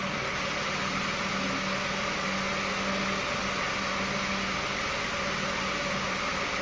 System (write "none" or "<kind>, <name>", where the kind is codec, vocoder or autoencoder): none